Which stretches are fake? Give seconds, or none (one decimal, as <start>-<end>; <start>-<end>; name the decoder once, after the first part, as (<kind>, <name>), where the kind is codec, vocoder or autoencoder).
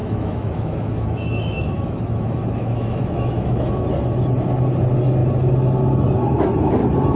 0.0-3.7 (autoencoder, DAC-VAE)